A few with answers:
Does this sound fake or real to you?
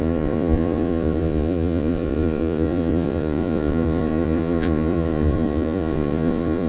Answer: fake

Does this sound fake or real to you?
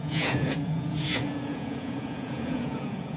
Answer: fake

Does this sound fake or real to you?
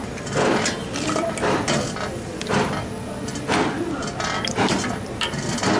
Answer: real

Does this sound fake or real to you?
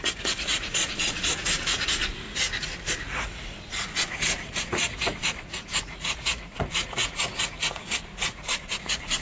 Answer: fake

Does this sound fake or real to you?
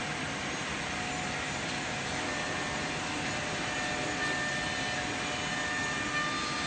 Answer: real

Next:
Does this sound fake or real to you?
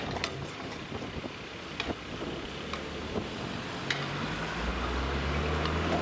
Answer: real